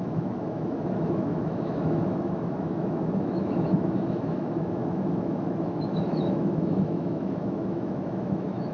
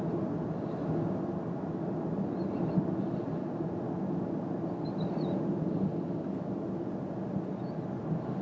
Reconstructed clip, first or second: first